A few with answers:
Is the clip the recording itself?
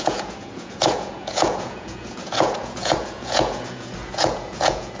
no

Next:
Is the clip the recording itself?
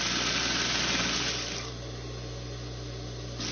yes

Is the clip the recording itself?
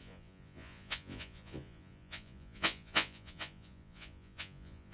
no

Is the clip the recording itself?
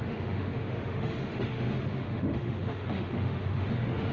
no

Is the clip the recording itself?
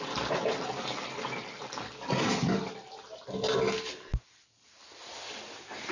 yes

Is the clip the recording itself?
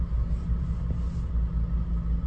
yes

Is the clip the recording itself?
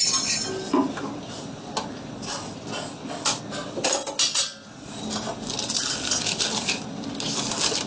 yes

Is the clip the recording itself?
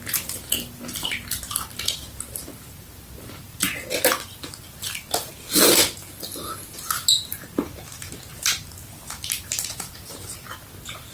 yes